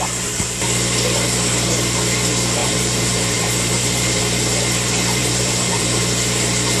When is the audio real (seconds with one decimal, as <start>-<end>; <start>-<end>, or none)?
0.0-2.6; 4.2-5.2; 6.0-6.8